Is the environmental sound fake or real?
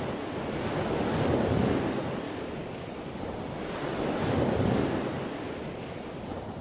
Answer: real